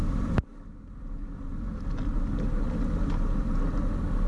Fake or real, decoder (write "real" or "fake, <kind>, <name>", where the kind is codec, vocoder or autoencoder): real